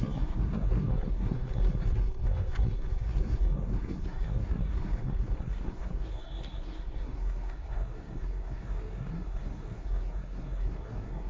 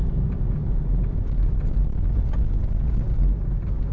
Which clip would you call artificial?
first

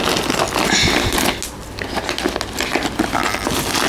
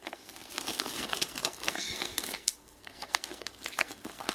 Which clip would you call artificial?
second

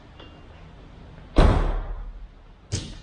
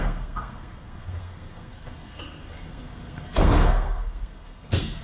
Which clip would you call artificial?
second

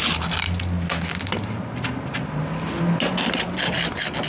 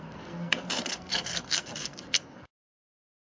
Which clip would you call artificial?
second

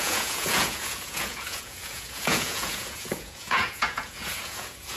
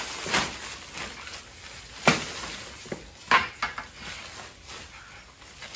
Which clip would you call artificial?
first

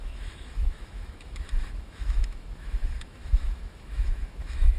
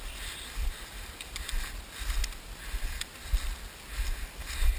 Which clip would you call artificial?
first